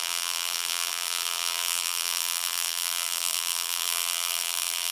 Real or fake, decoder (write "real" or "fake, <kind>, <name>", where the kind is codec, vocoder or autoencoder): fake, vocoder, BigVGAN v2